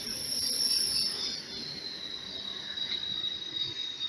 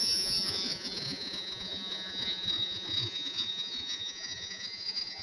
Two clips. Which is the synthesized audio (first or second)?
second